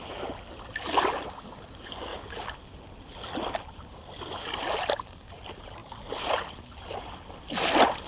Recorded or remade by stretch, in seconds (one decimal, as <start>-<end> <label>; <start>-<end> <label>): 0.0-8.1 recorded